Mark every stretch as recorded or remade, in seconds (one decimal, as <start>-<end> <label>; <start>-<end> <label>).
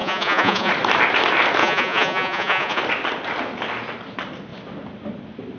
0.0-0.7 remade; 0.7-1.6 recorded; 1.6-2.8 remade; 2.8-5.6 recorded